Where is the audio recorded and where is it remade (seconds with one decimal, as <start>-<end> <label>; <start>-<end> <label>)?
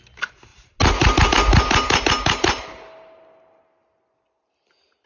0.0-5.1 recorded